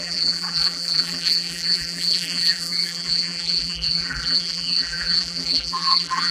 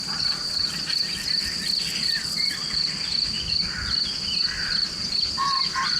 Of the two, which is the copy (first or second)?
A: first